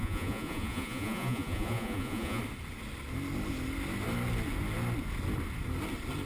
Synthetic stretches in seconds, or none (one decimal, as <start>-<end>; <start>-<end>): 0.0-2.4